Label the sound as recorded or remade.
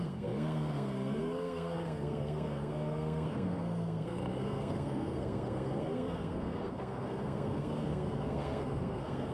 remade